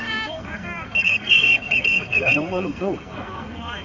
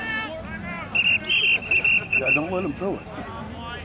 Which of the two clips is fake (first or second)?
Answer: first